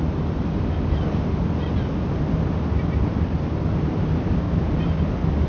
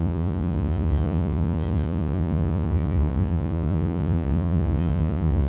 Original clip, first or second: first